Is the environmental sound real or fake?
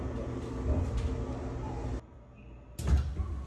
real